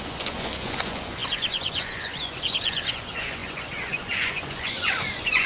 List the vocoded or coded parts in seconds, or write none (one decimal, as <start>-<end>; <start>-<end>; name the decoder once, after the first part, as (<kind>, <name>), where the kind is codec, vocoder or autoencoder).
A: 0.0-5.5 (vocoder, Vocos)